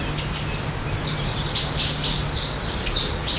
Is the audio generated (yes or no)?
no